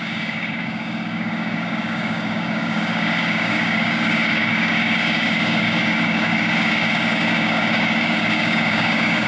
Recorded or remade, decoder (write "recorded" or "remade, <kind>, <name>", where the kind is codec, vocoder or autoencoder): remade, codec, DAC